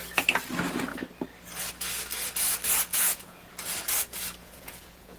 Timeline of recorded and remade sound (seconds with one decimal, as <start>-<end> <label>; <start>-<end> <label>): 0.0-2.9 recorded; 2.9-3.5 remade; 3.5-4.4 recorded; 4.4-5.2 remade